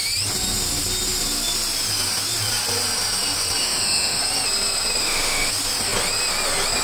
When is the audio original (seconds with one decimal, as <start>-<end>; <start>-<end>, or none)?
0.0-3.6; 4.2-5.0; 5.5-6.8